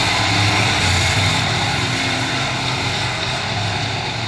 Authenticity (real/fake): fake